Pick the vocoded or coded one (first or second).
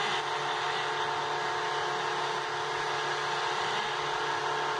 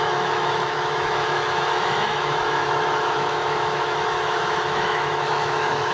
second